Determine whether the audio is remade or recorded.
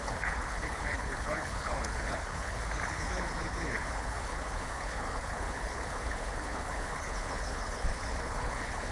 remade